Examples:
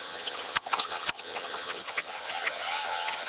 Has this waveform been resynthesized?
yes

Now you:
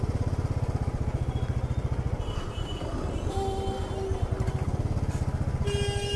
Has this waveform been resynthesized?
no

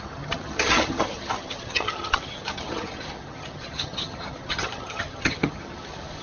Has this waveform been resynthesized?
yes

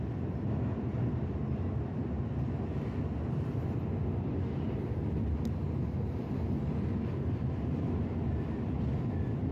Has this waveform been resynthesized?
no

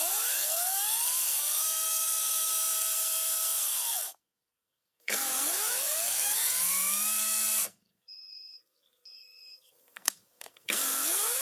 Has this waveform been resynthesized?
yes